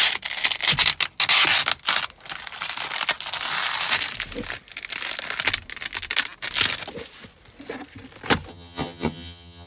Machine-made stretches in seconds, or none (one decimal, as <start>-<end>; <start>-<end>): 8.5-9.7